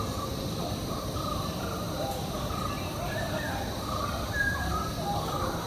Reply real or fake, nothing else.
fake